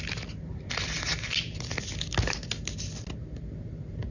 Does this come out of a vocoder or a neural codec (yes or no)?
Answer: no